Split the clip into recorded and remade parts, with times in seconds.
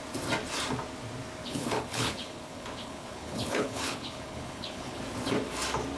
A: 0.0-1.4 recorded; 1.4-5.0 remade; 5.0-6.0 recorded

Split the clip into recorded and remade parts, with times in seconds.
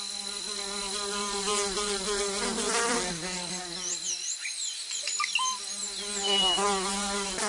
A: 0.0-4.4 recorded; 4.4-5.0 remade; 5.0-7.5 recorded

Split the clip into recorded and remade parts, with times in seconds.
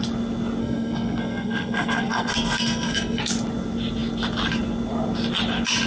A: 0.0-0.6 recorded; 0.6-3.2 remade; 3.2-5.9 recorded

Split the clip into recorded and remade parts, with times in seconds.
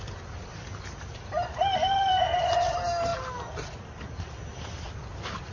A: 0.0-5.5 recorded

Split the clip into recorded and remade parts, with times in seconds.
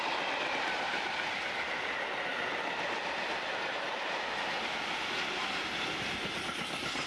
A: 0.0-7.1 recorded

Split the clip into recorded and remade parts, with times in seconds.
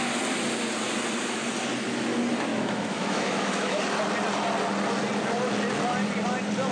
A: 0.0-2.5 recorded; 2.5-3.8 remade; 3.8-6.7 recorded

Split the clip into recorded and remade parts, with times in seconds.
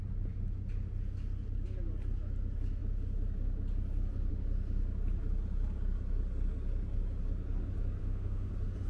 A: 0.0-8.0 recorded; 8.0-8.5 remade; 8.5-8.9 recorded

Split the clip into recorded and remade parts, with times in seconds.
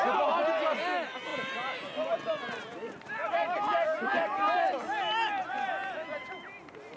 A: 0.0-7.0 recorded